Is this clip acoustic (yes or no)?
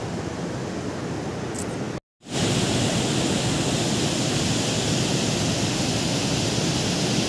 yes